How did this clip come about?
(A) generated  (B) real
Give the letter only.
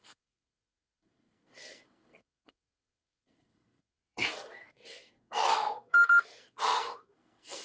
A